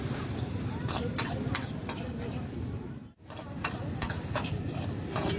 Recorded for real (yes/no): no